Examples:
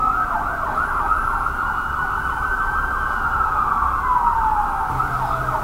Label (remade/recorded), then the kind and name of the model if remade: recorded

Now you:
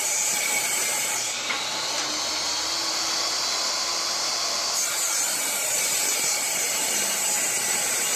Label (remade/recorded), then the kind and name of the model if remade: remade, vocoder, BigVGAN v2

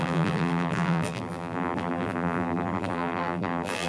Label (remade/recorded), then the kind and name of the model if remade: remade, vocoder, BigVGAN v2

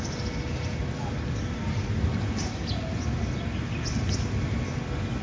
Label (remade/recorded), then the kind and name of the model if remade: recorded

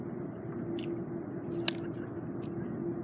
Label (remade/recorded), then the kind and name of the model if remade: recorded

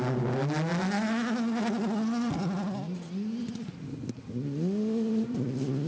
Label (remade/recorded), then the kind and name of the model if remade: recorded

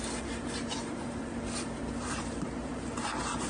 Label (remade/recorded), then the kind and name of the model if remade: remade, vocoder, BigVGAN v2